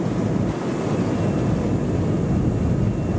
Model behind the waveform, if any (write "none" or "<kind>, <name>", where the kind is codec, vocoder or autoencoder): none